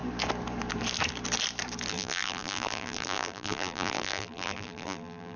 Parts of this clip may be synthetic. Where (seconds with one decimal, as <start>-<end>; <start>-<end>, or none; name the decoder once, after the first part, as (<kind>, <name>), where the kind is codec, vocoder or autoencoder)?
1.9-5.4 (vocoder, BigVGAN v2)